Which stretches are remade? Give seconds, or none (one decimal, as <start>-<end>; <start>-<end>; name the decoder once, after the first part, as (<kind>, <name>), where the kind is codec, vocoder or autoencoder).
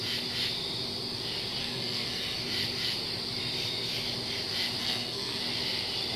1.6-2.4 (codec, SNAC); 4.8-5.4